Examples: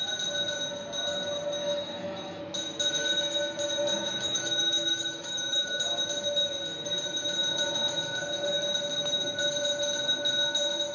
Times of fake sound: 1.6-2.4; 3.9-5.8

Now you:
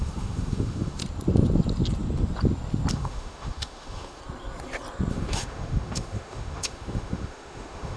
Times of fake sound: 0.0-1.0; 2.9-4.2; 5.1-8.0